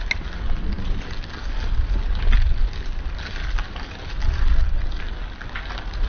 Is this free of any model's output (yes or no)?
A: yes